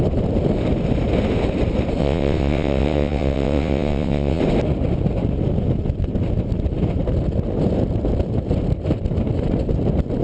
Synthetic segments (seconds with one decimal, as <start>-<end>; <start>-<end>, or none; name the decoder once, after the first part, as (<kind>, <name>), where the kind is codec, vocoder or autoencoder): 2.0-4.4 (vocoder, WaveNeXt)